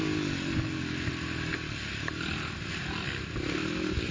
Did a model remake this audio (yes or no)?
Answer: no